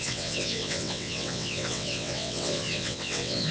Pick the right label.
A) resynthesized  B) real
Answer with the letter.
A